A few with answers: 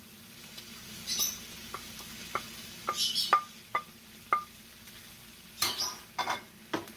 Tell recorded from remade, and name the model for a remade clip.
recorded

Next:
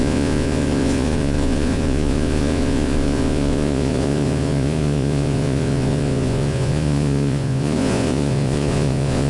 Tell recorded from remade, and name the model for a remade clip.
remade, vocoder, Vocos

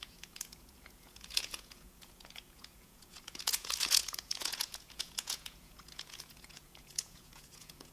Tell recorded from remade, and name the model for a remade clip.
remade, vocoder, Vocos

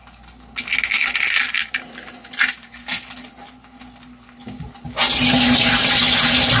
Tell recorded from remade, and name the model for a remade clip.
recorded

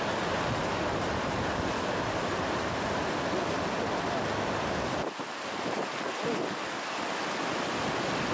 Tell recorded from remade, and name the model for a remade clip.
recorded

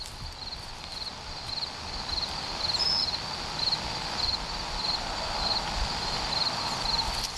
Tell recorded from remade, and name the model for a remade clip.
recorded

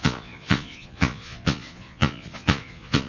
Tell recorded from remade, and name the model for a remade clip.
remade, vocoder, Vocos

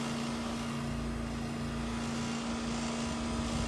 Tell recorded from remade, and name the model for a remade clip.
recorded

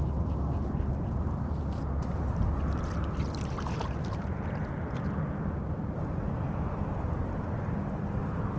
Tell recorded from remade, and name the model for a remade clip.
recorded